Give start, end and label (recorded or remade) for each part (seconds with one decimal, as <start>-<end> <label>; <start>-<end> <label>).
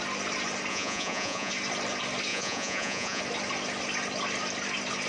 0.0-0.7 recorded; 0.7-1.5 remade; 1.5-2.3 recorded; 2.3-3.2 remade; 3.2-5.1 recorded